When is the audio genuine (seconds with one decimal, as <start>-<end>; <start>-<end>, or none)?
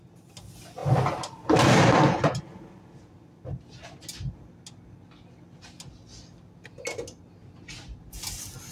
0.0-8.7